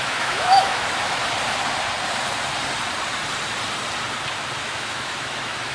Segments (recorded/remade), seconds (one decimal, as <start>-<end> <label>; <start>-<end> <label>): 0.0-1.2 remade; 1.2-4.6 recorded; 4.6-5.7 remade